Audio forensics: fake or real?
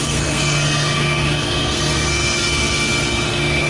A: fake